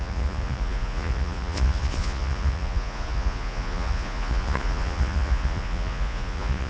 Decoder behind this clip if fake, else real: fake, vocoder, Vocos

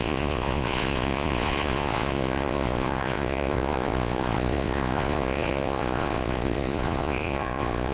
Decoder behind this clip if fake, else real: fake, vocoder, Vocos